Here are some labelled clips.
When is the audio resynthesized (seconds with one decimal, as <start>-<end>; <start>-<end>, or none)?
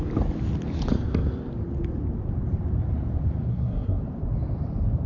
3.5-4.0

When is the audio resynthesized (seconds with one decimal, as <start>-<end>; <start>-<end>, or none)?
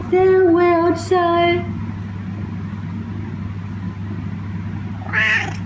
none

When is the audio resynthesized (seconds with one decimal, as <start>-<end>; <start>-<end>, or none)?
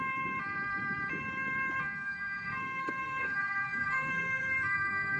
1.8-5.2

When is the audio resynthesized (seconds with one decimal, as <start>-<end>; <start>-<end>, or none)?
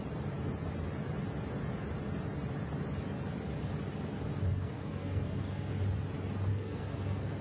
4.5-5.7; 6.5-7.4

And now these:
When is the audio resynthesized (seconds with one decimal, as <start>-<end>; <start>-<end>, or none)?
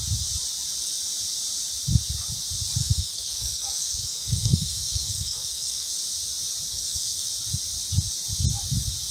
2.8-5.9; 6.7-7.3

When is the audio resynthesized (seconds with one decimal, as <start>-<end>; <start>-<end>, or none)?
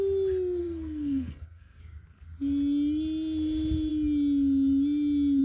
0.6-1.8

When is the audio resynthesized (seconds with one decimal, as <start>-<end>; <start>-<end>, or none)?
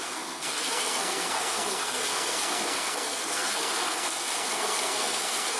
0.0-5.6